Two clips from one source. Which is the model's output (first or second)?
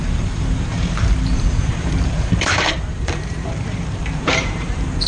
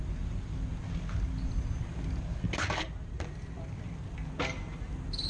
first